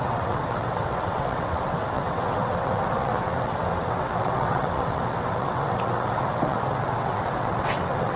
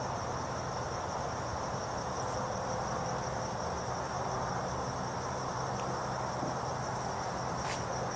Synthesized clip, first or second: first